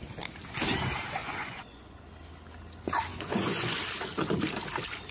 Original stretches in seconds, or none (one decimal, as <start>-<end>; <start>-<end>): 0.0-1.2; 2.0-3.1; 3.8-5.1